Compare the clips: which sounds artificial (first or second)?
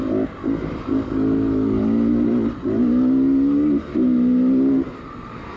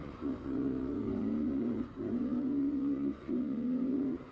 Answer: second